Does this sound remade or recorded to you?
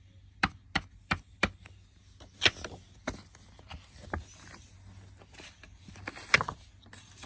recorded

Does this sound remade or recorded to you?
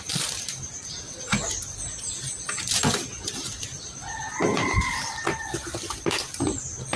recorded